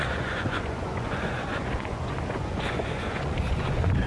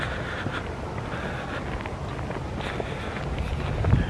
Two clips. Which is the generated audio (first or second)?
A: first